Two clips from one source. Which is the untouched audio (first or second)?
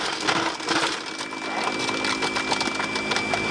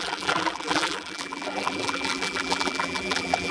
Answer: first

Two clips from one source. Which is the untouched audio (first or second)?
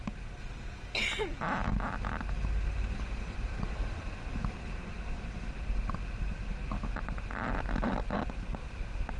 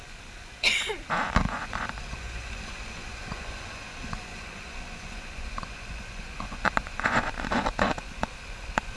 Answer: first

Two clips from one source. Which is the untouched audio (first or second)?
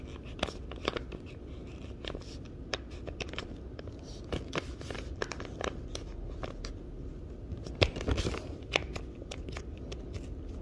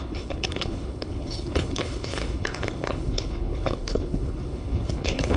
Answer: first